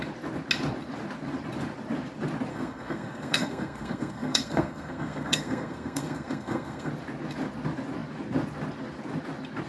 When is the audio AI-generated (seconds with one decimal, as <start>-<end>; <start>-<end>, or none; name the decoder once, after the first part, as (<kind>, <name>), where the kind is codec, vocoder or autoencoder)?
2.5-6.9 (codec, SNAC)